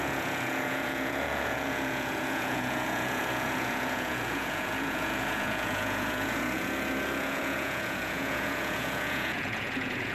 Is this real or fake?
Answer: fake